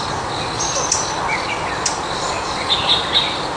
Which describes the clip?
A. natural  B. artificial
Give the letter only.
A